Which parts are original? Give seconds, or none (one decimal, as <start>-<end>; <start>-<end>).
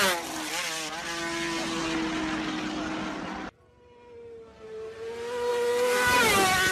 0.0-6.7